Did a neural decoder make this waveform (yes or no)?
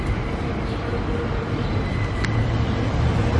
no